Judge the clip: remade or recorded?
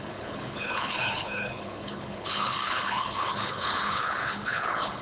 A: remade